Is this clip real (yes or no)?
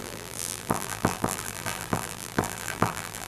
no